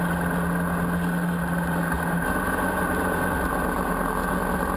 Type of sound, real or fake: real